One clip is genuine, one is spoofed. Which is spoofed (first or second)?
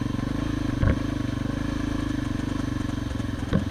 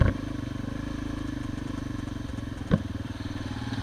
second